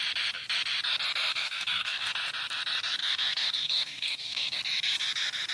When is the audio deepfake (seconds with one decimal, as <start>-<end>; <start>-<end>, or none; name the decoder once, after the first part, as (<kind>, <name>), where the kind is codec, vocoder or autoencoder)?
1.3-2.1 (codec, DAC); 3.0-4.6